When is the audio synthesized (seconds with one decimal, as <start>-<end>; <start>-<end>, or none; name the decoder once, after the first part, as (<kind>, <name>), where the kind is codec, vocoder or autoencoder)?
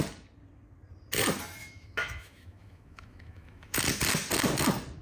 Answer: 1.6-3.8 (autoencoder, DAC-VAE)